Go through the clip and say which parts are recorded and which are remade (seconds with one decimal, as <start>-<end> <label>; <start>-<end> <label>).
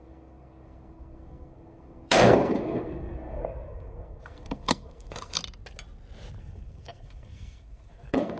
0.0-5.4 remade; 5.4-6.4 recorded; 6.4-8.4 remade